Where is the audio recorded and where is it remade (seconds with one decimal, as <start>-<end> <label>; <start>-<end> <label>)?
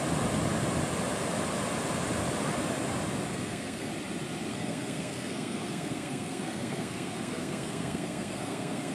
0.0-3.3 recorded; 3.3-3.9 remade; 3.9-4.5 recorded; 4.5-8.9 remade